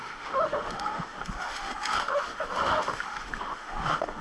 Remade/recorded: remade